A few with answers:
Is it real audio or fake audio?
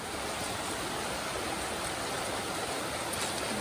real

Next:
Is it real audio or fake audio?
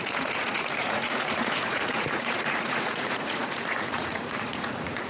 fake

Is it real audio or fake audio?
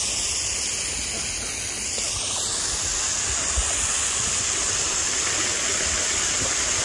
real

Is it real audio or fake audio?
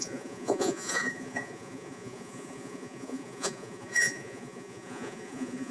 fake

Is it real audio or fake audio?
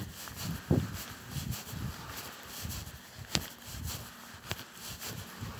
real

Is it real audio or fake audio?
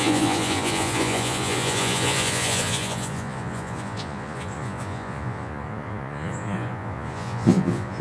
fake